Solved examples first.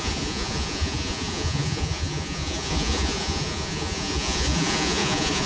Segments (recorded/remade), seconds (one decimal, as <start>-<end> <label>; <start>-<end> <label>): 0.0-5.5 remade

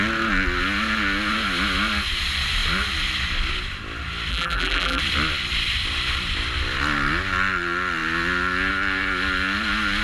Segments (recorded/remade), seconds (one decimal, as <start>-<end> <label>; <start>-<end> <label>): 0.0-4.3 recorded; 4.3-5.0 remade; 5.0-10.0 recorded

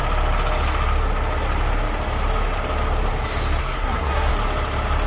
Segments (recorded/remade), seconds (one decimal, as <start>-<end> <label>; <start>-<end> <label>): 0.0-3.6 recorded; 3.6-4.3 remade; 4.3-5.1 recorded